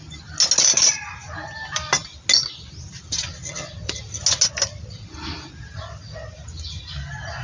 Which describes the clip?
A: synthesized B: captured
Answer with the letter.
B